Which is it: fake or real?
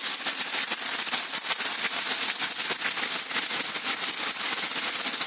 real